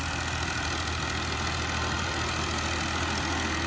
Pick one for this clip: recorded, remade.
recorded